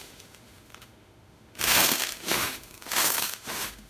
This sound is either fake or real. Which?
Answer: fake